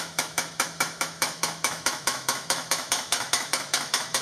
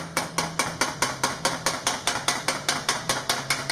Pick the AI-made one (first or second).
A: first